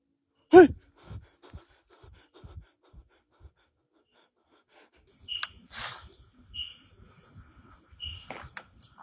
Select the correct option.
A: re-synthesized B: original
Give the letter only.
B